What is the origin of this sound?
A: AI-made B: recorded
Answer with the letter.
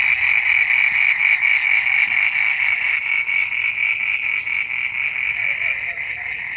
B